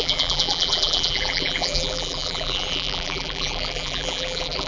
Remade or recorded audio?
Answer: remade